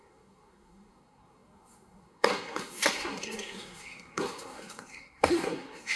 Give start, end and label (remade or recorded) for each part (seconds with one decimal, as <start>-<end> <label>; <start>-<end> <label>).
0.0-6.0 remade